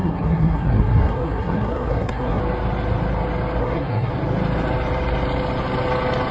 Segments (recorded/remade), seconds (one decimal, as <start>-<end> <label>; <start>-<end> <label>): 0.0-2.4 remade; 2.4-3.6 recorded; 3.6-4.1 remade; 4.1-6.3 recorded

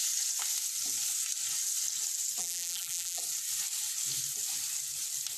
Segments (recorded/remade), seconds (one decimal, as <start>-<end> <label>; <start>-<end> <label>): 0.0-2.4 recorded; 2.4-3.2 remade; 3.2-5.4 recorded

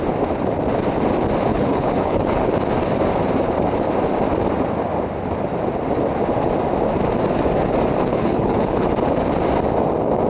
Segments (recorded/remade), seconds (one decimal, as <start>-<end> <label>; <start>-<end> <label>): 0.0-1.5 recorded; 1.5-2.6 remade; 2.6-8.1 recorded; 8.1-8.9 remade; 8.9-10.3 recorded

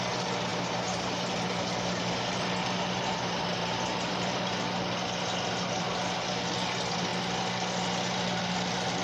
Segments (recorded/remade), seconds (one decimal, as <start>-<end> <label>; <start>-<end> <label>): 0.0-0.5 recorded; 0.5-4.6 remade; 4.6-9.0 recorded

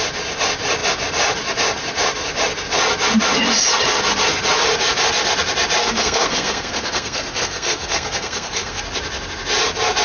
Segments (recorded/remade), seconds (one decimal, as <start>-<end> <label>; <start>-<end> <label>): 0.0-5.8 recorded; 5.8-8.8 remade; 8.8-10.0 recorded